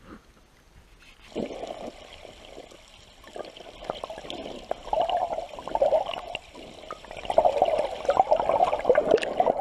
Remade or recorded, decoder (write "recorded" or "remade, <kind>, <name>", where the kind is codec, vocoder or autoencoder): recorded